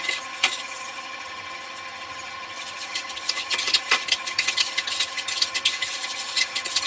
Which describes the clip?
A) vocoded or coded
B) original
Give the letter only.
A